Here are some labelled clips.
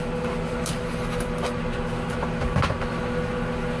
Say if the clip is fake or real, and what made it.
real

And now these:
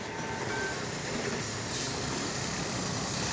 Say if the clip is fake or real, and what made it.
fake, vocoder, BigVGAN v2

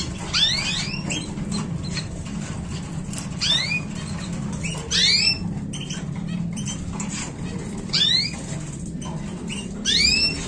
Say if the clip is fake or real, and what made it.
fake, vocoder, BigVGAN v2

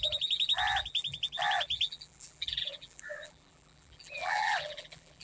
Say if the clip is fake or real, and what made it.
fake, vocoder, BigVGAN v2